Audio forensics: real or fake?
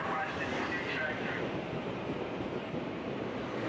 fake